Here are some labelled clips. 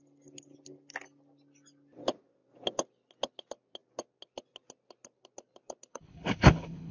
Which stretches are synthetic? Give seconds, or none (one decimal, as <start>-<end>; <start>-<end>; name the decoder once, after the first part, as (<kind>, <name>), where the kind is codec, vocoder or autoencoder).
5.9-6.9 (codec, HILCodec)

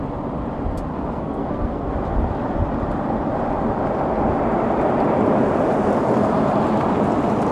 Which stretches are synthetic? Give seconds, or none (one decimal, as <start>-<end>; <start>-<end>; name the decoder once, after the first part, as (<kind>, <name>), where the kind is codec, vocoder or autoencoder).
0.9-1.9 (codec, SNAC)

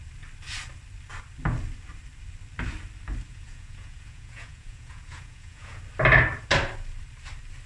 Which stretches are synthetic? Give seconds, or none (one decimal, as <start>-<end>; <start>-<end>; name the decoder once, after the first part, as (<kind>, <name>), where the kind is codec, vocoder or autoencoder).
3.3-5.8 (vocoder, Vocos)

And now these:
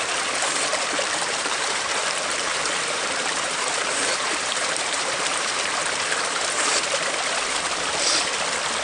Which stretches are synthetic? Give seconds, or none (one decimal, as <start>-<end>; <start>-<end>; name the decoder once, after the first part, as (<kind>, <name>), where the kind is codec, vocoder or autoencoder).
0.7-5.8 (vocoder, BigVGAN v2)

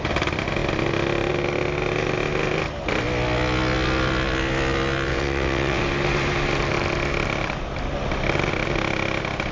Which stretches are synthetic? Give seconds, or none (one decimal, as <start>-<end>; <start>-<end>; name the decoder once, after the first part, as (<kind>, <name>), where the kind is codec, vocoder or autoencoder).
5.1-5.8 (vocoder, WaveNeXt)

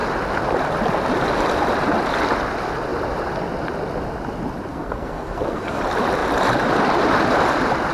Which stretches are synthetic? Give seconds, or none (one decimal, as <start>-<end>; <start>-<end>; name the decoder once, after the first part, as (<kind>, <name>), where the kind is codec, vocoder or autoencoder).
4.7-5.8 (codec, SNAC)

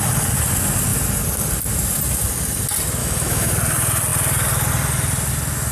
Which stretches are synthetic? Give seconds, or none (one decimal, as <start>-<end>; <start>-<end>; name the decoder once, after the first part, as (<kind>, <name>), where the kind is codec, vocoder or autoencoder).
3.0-3.5 (autoencoder, DAC-VAE)